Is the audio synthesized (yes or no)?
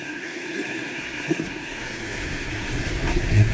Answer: yes